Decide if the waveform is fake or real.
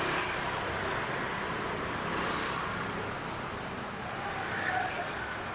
real